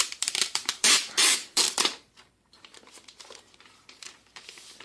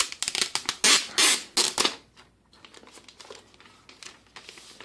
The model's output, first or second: first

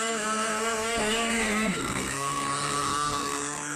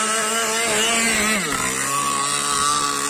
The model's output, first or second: first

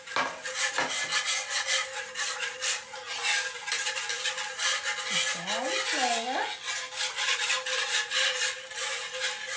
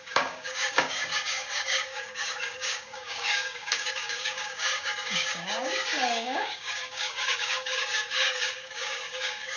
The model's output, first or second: second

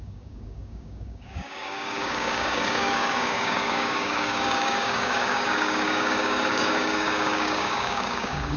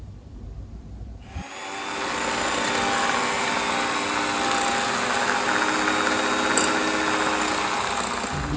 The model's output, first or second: first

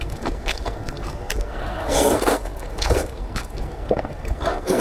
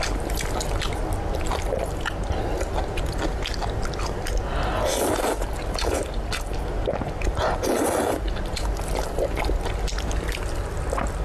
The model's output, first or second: first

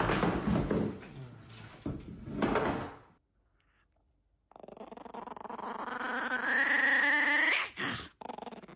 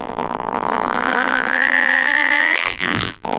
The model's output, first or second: second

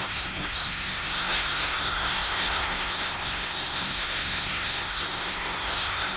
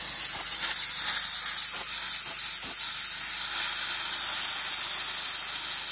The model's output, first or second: first